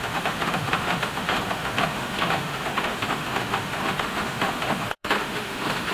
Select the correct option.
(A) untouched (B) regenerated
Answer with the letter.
B